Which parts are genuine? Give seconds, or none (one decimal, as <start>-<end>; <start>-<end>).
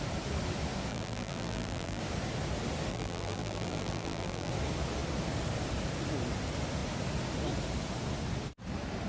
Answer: 0.0-0.9; 2.0-2.9; 4.5-9.1